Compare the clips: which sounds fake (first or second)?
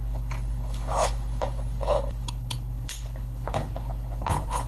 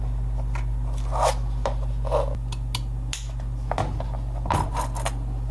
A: first